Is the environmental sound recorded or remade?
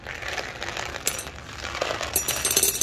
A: recorded